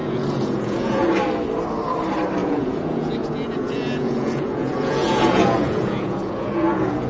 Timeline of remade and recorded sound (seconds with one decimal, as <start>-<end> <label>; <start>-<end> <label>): 0.0-1.1 remade; 1.1-2.4 recorded; 2.4-7.1 remade

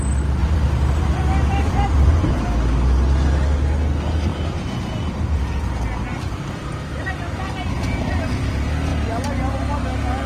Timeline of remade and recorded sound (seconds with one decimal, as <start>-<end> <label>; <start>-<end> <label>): 0.0-0.4 recorded; 0.4-2.2 remade; 2.2-4.3 recorded; 4.3-8.2 remade; 8.2-10.3 recorded

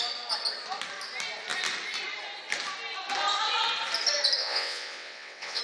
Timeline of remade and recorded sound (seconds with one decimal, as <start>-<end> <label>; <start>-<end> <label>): 0.0-4.4 recorded; 4.4-5.6 remade

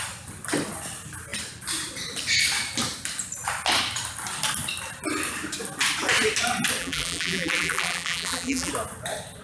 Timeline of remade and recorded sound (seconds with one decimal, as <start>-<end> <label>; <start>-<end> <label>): 0.0-6.8 recorded; 6.8-8.7 remade; 8.7-9.4 recorded

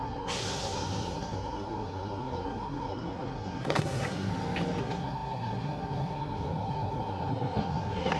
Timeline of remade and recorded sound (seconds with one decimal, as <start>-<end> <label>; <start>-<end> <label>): 0.0-4.3 remade; 4.3-4.8 recorded; 4.8-8.2 remade

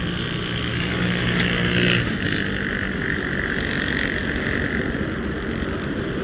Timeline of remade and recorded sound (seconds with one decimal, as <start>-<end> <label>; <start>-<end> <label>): 0.0-0.7 recorded; 0.7-1.4 remade; 1.4-6.2 recorded

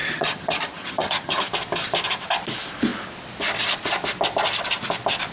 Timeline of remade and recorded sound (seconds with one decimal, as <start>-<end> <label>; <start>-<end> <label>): 0.0-1.5 remade; 1.5-5.3 recorded